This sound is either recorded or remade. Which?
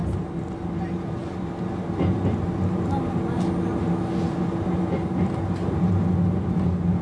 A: recorded